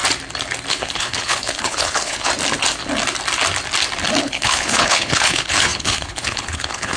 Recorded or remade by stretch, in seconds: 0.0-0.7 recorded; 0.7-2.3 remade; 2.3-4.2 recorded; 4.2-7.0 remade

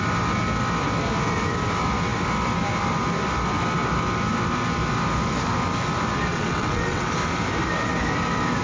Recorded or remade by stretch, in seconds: 0.0-6.3 recorded; 6.3-7.1 remade; 7.1-8.6 recorded

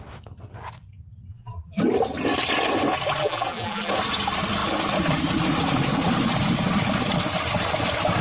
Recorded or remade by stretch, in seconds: 0.0-1.3 recorded; 1.3-1.8 remade; 1.8-3.2 recorded; 3.2-3.9 remade; 3.9-8.2 recorded